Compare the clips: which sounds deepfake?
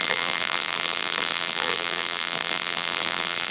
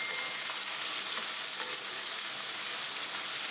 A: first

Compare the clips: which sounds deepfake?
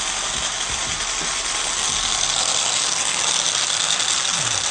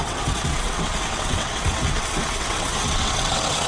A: second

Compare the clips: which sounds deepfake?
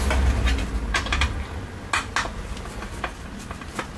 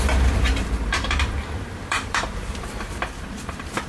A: second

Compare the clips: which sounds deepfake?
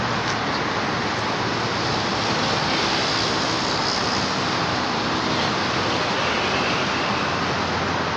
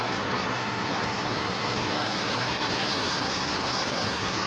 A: second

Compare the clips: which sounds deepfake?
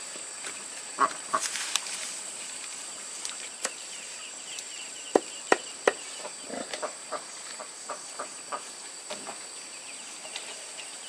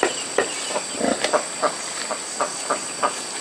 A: first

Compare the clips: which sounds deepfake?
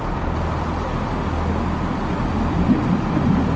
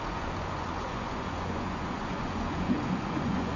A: second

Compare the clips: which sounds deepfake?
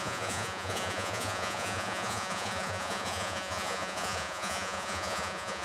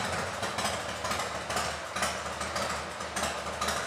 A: first